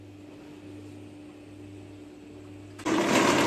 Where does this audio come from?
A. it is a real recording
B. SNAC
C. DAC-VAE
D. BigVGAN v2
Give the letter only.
A